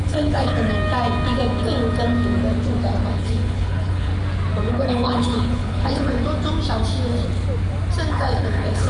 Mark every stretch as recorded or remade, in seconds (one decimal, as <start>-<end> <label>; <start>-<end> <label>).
0.0-0.7 remade; 0.7-3.1 recorded; 3.1-4.1 remade; 4.1-4.7 recorded; 4.7-6.2 remade; 6.2-8.1 recorded; 8.1-8.9 remade